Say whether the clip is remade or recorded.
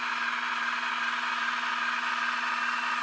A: recorded